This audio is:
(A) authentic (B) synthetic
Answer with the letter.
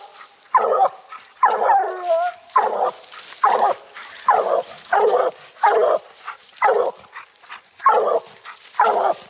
A